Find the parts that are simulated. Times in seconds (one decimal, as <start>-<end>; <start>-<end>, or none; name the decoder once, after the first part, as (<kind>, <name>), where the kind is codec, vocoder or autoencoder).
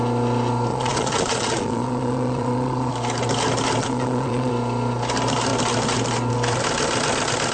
0.7-2.9 (vocoder, Vocos); 3.8-4.5